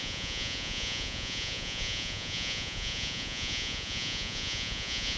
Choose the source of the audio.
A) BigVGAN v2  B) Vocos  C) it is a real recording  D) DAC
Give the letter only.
B